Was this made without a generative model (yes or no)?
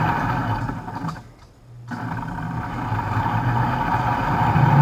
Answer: yes